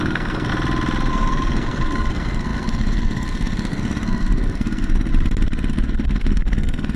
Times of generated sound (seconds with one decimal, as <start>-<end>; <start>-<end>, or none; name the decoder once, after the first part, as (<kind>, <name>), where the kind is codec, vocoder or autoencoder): 0.0-0.5 (codec, SNAC); 1.1-5.1; 5.7-7.0